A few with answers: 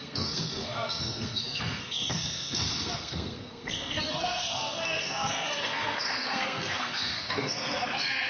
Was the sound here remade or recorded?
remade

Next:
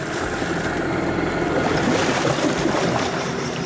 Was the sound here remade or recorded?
recorded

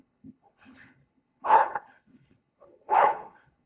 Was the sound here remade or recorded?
remade